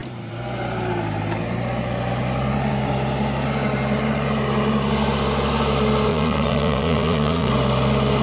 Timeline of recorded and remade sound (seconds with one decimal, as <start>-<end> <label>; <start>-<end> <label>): 0.0-6.1 recorded; 6.1-7.5 remade; 7.5-8.2 recorded